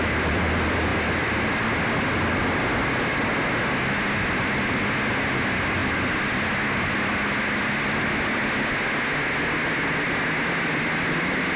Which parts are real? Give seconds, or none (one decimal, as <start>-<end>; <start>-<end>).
0.0-11.6